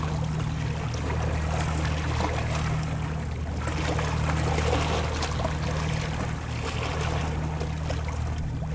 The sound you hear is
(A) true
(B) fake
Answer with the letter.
A